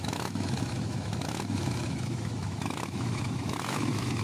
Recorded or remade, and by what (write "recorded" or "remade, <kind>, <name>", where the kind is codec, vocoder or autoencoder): remade, autoencoder, DAC-VAE